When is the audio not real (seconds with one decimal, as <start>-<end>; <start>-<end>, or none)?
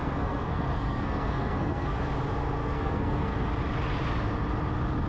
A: 0.0-2.0; 2.6-3.5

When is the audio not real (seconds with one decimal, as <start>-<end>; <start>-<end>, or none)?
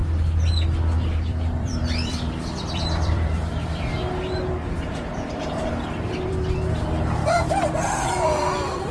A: 1.3-3.9; 4.7-7.2; 7.7-8.9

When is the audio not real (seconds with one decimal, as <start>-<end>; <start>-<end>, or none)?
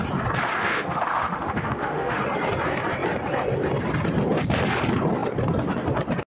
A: 0.6-2.2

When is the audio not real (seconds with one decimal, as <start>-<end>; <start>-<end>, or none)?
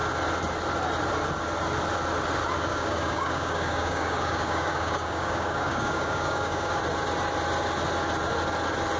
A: 2.7-6.8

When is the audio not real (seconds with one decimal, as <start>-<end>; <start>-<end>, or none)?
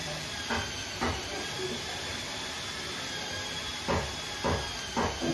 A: none